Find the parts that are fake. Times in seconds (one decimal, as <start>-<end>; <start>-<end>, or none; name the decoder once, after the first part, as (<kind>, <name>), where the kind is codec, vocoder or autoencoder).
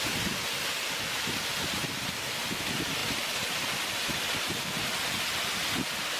none